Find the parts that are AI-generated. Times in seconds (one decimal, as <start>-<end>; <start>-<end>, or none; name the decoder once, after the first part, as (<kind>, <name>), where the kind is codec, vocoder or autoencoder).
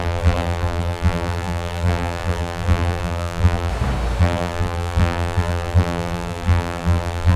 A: 0.0-3.7 (vocoder, BigVGAN v2); 4.2-7.4